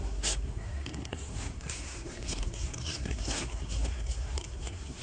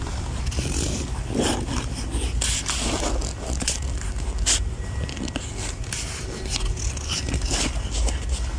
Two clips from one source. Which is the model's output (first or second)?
first